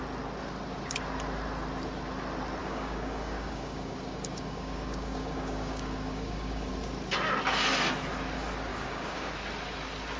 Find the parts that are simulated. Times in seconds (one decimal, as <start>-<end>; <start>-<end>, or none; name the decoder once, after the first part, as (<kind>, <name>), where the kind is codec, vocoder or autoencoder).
2.6-6.7 (codec, DAC); 8.7-9.3